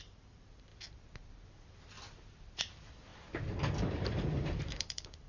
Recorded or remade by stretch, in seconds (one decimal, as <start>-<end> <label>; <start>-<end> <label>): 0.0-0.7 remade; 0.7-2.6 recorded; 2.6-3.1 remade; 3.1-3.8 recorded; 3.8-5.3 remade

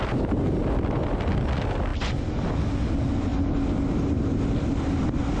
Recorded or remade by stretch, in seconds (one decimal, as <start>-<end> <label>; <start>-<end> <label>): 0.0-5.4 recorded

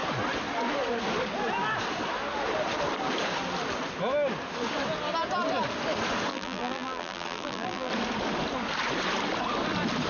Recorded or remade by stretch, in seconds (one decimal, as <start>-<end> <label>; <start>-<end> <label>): 0.0-6.3 recorded; 6.3-7.9 remade; 7.9-10.1 recorded

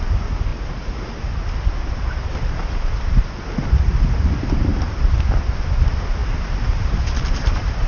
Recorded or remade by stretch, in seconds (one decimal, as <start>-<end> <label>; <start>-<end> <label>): 0.0-6.2 recorded; 6.2-7.9 remade

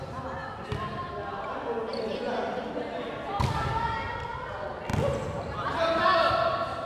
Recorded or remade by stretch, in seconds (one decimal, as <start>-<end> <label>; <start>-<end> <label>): 0.0-6.9 recorded

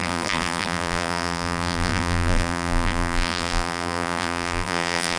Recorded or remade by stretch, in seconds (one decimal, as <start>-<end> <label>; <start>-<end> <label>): 0.0-5.2 remade

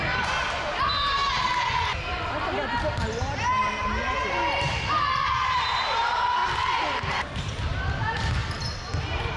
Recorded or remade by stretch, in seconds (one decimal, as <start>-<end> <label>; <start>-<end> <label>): 0.0-1.2 remade; 1.2-4.3 recorded; 4.3-6.4 remade; 6.4-7.1 recorded; 7.1-8.4 remade; 8.4-9.0 recorded; 9.0-9.4 remade